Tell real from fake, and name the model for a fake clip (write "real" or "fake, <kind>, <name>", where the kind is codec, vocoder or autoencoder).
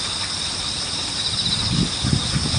real